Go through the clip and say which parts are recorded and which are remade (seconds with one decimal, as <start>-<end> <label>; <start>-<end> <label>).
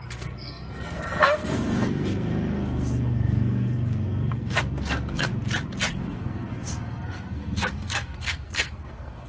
0.0-5.3 remade; 5.3-5.9 recorded; 5.9-9.3 remade